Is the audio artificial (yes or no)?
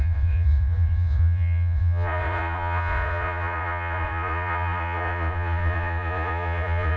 yes